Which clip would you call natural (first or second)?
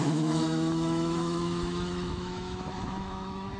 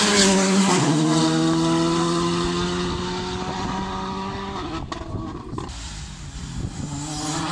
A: second